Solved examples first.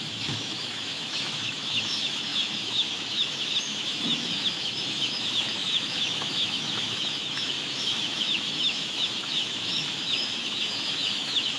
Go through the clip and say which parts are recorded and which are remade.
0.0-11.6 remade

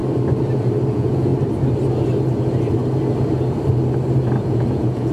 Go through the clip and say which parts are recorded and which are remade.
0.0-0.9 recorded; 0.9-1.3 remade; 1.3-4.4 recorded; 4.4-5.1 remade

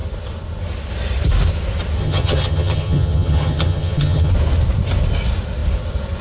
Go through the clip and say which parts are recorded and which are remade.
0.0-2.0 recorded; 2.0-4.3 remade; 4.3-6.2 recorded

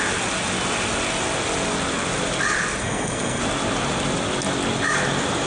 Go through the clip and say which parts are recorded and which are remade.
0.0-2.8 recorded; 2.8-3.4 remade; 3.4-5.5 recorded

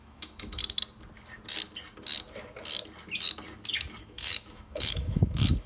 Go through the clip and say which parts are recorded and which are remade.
0.0-0.6 remade; 0.6-4.0 recorded; 4.0-5.7 remade

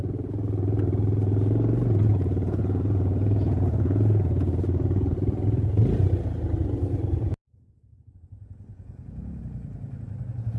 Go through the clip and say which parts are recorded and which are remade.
0.0-2.1 recorded; 2.1-5.8 remade; 5.8-8.7 recorded; 8.7-9.4 remade; 9.4-10.6 recorded